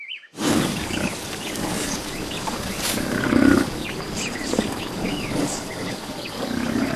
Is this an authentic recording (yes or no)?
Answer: no